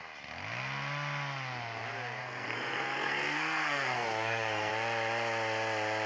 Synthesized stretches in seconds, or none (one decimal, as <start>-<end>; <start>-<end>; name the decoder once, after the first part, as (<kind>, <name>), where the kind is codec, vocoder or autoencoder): 2.2-4.7 (codec, SNAC)